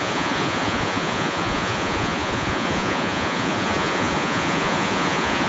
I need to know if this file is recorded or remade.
remade